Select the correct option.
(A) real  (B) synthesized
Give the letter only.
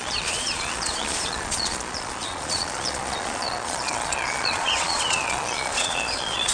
B